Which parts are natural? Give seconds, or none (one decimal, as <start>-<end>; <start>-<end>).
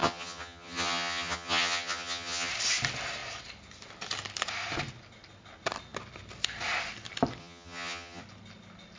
2.5-7.4; 8.2-9.0